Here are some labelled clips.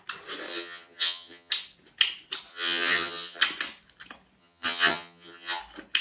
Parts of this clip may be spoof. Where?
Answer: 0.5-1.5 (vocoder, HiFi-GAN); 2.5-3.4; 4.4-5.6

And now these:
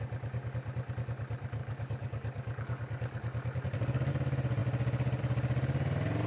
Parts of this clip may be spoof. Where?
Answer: 1.6-4.1 (codec, DAC)

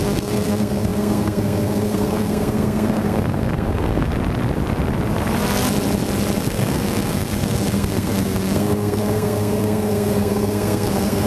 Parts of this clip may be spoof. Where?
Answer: 0.0-4.1 (codec, SNAC); 6.4-11.3

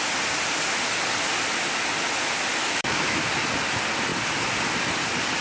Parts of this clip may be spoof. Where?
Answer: 2.6-3.2 (autoencoder, DAC-VAE)

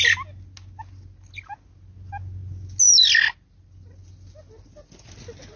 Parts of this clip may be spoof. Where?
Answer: none

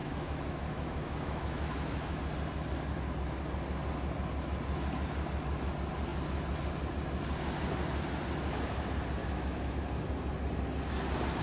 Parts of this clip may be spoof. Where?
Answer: 0.0-2.2 (autoencoder, DAC-VAE); 9.2-9.8